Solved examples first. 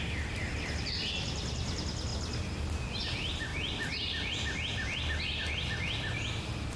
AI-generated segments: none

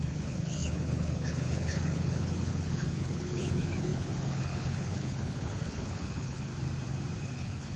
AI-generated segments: 0.0-6.5 (codec, HILCodec); 7.2-7.8